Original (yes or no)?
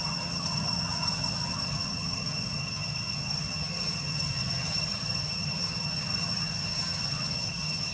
no